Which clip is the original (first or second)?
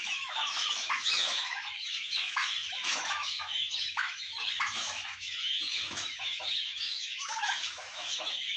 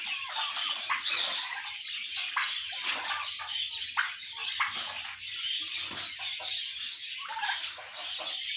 second